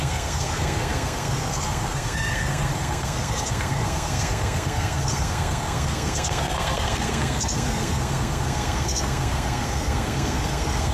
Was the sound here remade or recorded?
remade